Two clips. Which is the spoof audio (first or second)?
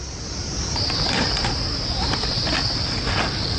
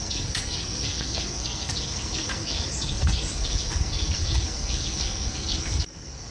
second